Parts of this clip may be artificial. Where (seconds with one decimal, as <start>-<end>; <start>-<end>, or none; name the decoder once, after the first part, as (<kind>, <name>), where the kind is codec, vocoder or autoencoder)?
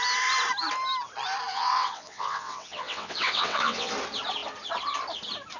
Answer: 1.5-3.9 (vocoder, WaveNeXt)